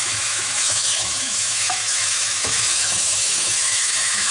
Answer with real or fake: fake